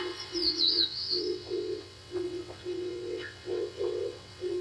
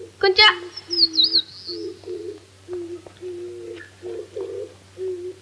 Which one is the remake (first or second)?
first